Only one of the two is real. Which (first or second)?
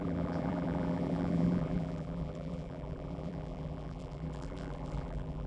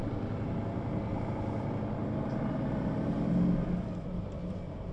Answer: second